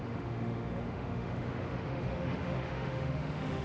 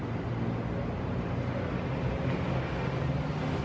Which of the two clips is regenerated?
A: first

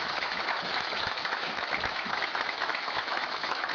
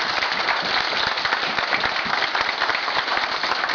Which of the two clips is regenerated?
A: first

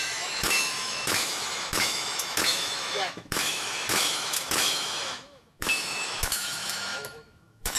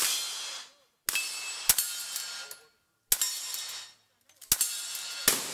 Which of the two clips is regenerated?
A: first